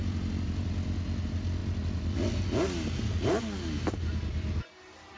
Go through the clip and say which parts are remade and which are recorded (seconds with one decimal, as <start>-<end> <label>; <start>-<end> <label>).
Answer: 0.0-5.2 recorded